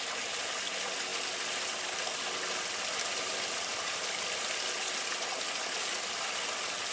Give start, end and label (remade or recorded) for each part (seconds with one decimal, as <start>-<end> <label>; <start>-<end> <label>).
0.0-1.1 recorded; 1.1-4.7 remade; 4.7-6.9 recorded